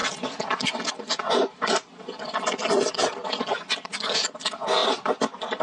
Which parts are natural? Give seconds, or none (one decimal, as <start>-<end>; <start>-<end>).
3.4-4.8